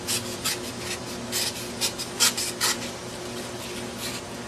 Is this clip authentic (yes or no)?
yes